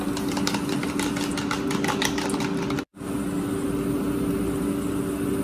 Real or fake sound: real